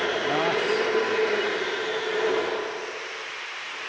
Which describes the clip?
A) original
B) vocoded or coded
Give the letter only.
B